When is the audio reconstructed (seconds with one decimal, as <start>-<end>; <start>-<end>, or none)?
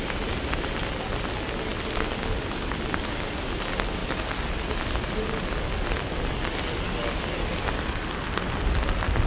none